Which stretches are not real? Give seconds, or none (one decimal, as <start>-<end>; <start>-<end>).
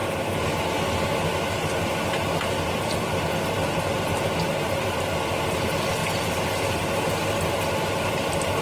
none